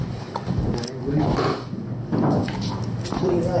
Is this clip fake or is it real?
real